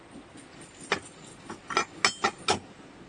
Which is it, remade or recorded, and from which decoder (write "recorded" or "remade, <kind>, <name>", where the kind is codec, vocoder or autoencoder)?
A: recorded